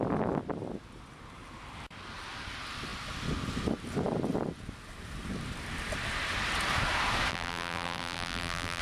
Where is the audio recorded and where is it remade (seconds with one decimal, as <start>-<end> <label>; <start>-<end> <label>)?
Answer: 0.0-7.3 recorded; 7.3-8.8 remade

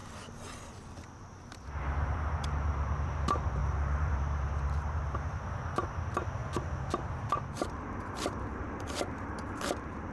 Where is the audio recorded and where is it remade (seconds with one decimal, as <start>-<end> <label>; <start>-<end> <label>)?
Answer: 0.0-1.2 recorded; 1.2-6.4 remade; 6.4-7.1 recorded; 7.1-10.1 remade

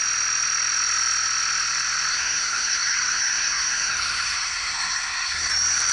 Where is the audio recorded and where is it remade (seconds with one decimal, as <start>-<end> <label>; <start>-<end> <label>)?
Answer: 0.0-2.1 recorded; 2.1-5.5 remade; 5.5-5.9 recorded

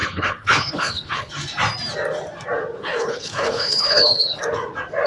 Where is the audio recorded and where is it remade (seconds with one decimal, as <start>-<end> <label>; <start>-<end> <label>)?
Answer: 0.0-1.3 remade; 1.3-2.8 recorded; 2.8-4.4 remade; 4.4-5.1 recorded

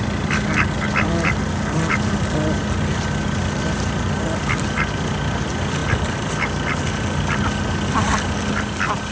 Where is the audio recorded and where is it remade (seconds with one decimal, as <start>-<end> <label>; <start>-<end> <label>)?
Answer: 0.0-9.1 recorded

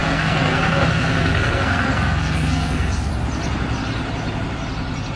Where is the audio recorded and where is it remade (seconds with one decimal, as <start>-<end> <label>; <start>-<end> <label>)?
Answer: 0.0-3.1 remade; 3.1-5.2 recorded